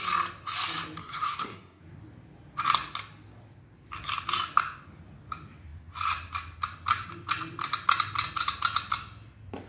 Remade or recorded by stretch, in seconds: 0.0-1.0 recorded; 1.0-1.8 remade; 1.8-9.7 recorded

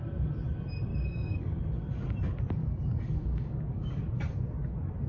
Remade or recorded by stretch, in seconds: 0.0-0.9 recorded; 0.9-1.6 remade; 1.6-2.6 recorded; 2.6-4.0 remade; 4.0-5.1 recorded

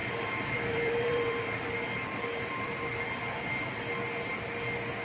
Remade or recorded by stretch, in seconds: 0.0-3.0 remade; 3.0-5.0 recorded